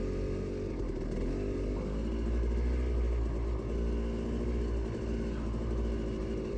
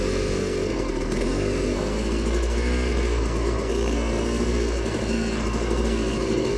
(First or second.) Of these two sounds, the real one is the first